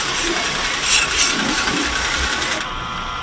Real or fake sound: real